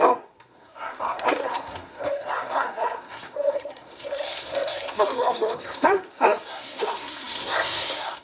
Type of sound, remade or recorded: remade